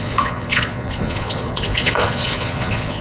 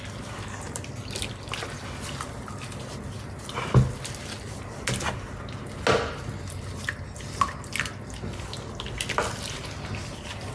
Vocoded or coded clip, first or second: first